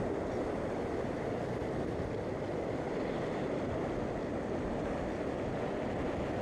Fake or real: real